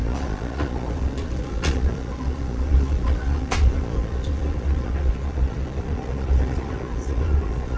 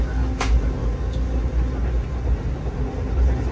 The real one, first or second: second